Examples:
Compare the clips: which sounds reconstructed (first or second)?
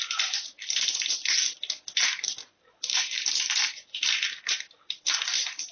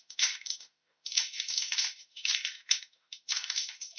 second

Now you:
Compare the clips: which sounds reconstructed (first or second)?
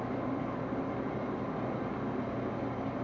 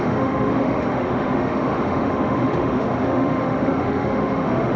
second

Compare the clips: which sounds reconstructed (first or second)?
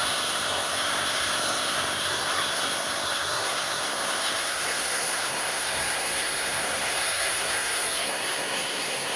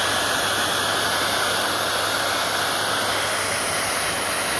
first